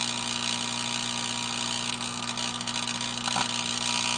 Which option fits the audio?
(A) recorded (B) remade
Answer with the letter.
A